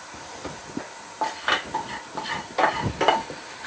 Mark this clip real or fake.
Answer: real